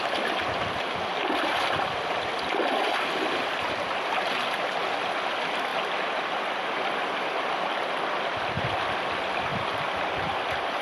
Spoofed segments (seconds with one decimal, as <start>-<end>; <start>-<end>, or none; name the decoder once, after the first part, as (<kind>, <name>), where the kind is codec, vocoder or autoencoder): 0.0-5.7 (vocoder, BigVGAN v2); 6.6-10.8